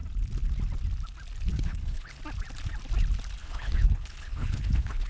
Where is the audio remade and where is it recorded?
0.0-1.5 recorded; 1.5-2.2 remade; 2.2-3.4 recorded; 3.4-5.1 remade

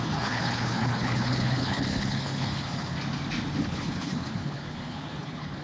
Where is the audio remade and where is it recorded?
0.0-2.9 remade; 2.9-3.6 recorded; 3.6-5.6 remade

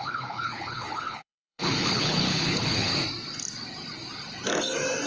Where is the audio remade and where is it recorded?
0.0-2.9 remade; 2.9-5.1 recorded

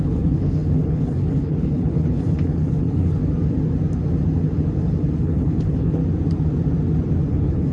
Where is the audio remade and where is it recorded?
0.0-3.2 remade; 3.2-5.2 recorded; 5.2-6.0 remade; 6.0-7.3 recorded; 7.3-7.7 remade

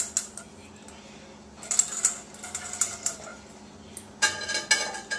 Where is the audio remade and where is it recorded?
0.0-5.2 recorded

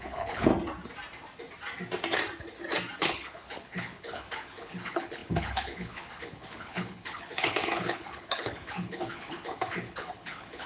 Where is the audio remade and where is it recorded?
0.0-0.5 remade; 0.5-3.0 recorded; 3.0-10.7 remade

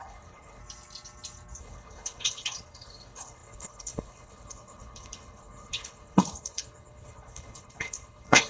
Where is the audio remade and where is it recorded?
0.0-0.6 remade; 0.6-1.6 recorded; 1.6-8.5 remade

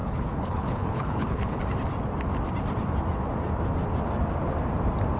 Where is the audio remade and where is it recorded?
0.0-1.6 remade; 1.6-5.2 recorded